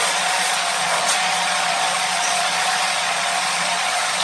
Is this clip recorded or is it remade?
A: remade